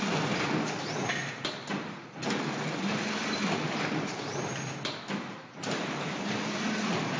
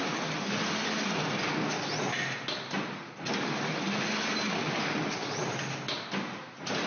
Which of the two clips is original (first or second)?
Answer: second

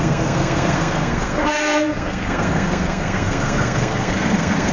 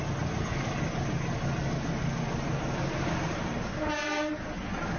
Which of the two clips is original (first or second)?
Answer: second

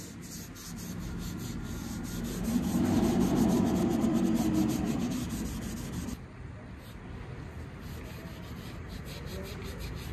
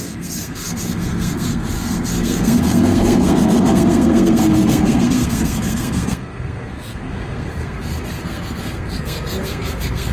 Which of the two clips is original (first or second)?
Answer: first